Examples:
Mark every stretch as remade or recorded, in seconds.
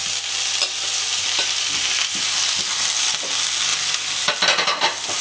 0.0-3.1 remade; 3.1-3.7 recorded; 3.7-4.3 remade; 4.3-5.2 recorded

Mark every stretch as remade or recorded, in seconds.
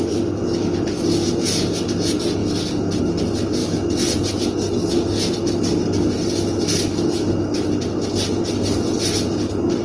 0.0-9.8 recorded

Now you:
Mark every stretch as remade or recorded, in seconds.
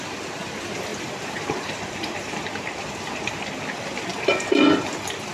0.0-0.9 recorded; 0.9-3.3 remade; 3.3-4.1 recorded; 4.1-5.3 remade